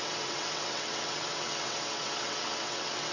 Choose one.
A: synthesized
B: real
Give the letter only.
A